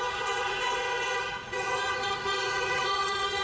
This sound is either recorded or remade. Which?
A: remade